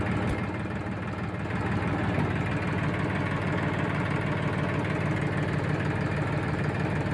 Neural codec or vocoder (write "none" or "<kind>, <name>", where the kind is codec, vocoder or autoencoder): none